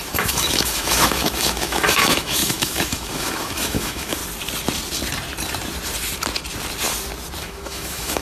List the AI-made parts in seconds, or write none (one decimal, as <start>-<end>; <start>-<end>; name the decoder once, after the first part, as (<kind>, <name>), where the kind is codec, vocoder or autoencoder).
0.0-4.2 (autoencoder, DAC-VAE); 7.4-8.2